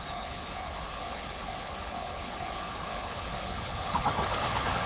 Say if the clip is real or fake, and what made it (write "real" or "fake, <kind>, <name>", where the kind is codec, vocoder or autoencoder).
fake, codec, HILCodec